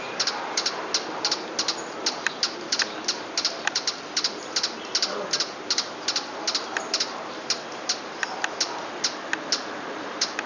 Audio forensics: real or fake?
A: real